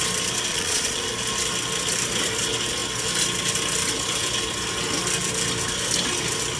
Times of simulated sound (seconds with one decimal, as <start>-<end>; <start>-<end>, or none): 0.5-1.0